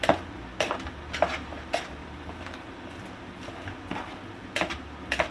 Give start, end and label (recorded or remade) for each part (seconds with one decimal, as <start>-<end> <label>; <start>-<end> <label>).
0.0-2.0 recorded; 2.0-3.2 remade; 3.2-5.3 recorded